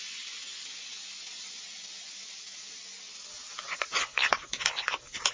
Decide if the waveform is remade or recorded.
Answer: recorded